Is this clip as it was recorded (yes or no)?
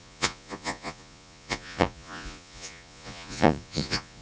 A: no